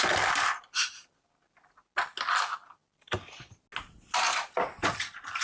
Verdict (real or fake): real